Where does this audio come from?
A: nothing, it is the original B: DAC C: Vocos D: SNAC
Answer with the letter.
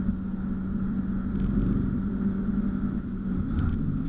A